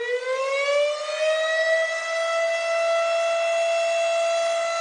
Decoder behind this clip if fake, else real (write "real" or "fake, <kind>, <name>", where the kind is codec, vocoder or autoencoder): real